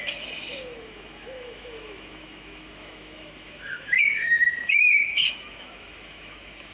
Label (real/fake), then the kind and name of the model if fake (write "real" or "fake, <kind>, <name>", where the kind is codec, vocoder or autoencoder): fake, autoencoder, DAC-VAE